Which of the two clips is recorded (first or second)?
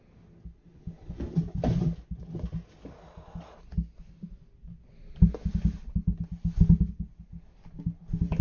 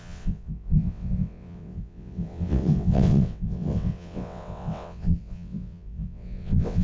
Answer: first